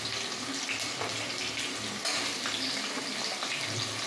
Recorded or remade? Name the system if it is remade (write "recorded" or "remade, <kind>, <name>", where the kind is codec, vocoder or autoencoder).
recorded